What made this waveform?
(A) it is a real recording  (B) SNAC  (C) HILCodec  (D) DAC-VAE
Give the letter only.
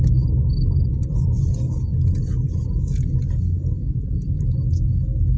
A